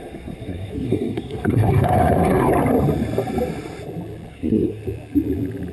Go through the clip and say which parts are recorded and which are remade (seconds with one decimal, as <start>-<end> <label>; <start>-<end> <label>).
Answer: 0.0-2.5 remade; 2.5-4.3 recorded; 4.3-4.8 remade; 4.8-5.7 recorded